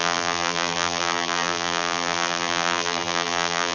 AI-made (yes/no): yes